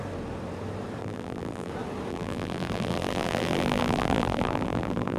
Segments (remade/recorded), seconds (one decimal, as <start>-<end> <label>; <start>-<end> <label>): 0.0-1.0 recorded; 1.0-1.7 remade; 1.7-2.1 recorded; 2.1-5.2 remade